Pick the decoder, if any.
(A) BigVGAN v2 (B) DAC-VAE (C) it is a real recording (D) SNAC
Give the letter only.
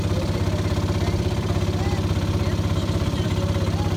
A